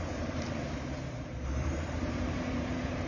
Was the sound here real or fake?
fake